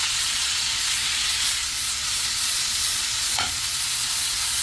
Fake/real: fake